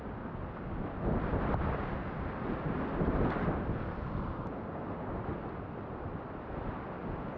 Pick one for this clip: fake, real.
real